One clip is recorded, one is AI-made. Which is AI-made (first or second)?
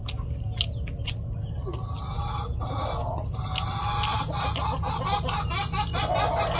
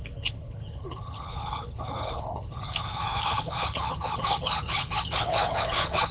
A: second